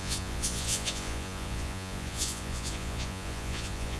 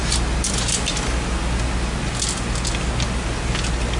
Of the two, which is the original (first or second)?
second